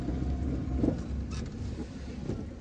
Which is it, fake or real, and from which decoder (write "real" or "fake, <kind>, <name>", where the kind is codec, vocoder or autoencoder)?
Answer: real